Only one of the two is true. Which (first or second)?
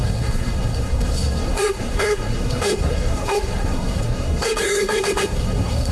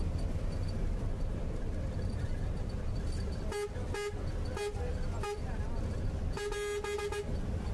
second